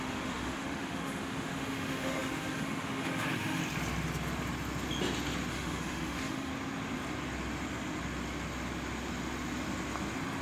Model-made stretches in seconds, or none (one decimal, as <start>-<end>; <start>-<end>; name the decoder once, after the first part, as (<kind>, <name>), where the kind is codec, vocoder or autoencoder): 0.0-3.6 (autoencoder, DAC-VAE); 5.5-6.5